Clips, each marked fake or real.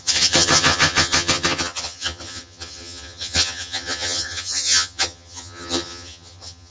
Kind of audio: fake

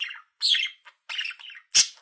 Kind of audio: real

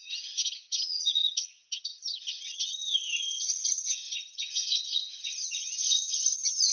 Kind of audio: fake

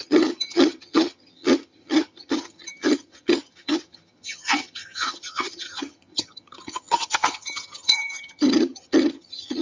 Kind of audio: fake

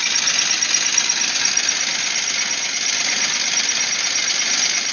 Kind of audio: real